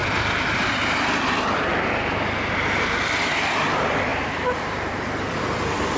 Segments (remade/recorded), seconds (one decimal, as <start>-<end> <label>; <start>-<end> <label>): 0.0-0.6 recorded; 0.6-1.7 remade; 1.7-3.3 recorded; 3.3-6.0 remade